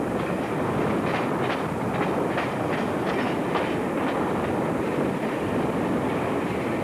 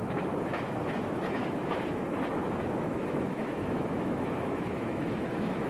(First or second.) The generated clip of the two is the second